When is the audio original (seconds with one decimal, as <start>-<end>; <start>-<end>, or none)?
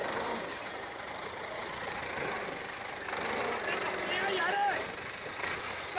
0.0-0.6; 2.0-5.3